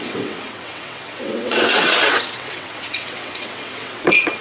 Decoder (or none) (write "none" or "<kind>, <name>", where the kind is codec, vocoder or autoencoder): vocoder, WaveNeXt